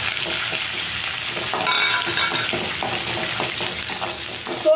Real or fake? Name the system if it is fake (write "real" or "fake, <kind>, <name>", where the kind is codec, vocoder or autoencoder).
real